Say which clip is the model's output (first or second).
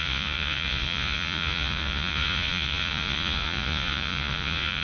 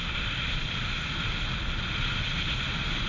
first